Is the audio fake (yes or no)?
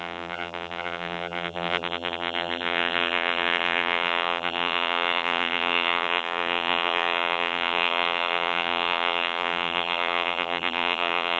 yes